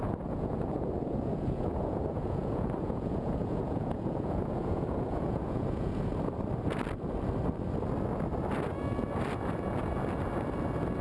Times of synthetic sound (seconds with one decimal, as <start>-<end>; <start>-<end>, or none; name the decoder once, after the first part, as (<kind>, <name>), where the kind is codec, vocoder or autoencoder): 0.0-6.1 (vocoder, Vocos)